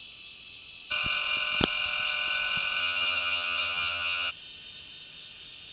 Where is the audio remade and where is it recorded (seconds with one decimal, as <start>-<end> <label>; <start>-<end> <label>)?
0.0-2.8 recorded; 2.8-4.3 remade; 4.3-5.7 recorded